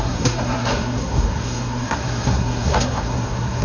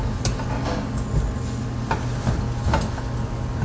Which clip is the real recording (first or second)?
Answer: second